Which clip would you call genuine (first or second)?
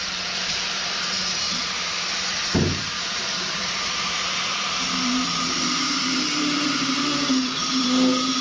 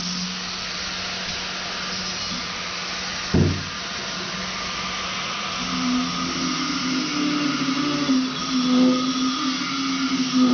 second